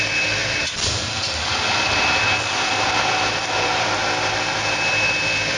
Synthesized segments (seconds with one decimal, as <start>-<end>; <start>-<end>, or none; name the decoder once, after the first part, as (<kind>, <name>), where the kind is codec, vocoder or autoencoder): none